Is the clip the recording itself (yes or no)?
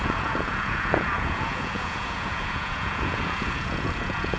no